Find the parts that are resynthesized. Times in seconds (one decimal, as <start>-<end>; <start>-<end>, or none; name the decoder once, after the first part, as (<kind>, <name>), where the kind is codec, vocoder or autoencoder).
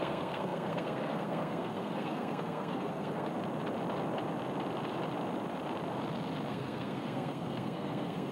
0.0-3.3 (codec, SNAC); 6.5-8.3